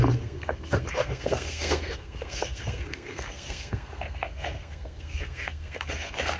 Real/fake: fake